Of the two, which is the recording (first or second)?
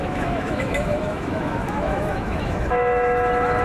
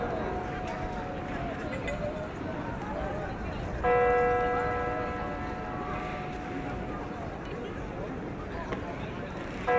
second